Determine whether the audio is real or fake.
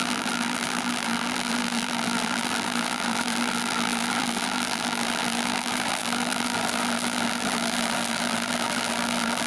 fake